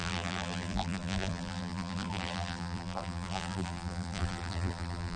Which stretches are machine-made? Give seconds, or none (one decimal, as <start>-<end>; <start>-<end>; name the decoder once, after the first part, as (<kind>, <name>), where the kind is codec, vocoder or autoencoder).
0.0-5.2 (vocoder, BigVGAN v2)